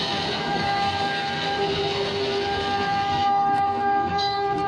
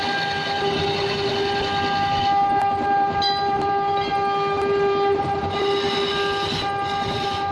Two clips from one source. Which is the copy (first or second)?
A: first